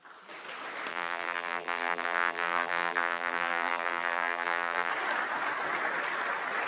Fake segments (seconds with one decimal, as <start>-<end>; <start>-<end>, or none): 0.9-4.9